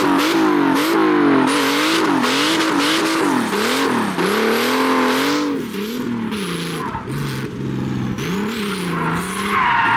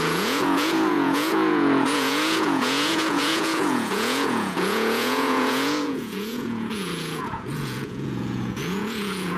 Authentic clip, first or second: first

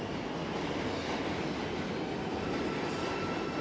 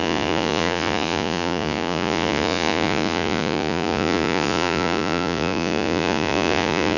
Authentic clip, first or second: first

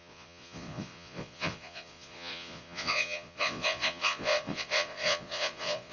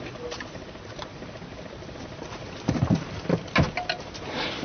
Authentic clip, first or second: second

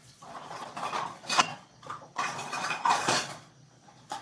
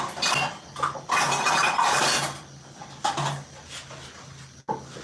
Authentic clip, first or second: second